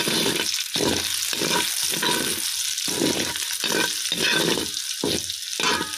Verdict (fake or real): real